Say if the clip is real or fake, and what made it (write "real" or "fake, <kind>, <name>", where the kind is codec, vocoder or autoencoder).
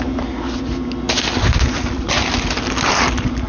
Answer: real